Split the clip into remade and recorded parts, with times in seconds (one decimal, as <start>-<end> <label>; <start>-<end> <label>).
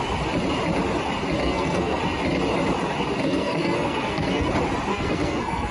0.0-1.4 recorded; 1.4-2.0 remade; 2.0-3.2 recorded; 3.2-4.5 remade; 4.5-4.9 recorded; 4.9-5.7 remade